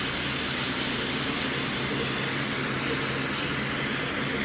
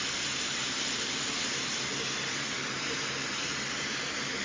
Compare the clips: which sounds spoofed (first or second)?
second